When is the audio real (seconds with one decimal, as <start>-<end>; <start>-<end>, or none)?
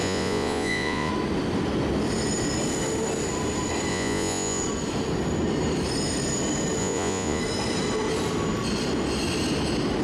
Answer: 1.1-3.9; 4.6-6.8; 7.4-10.0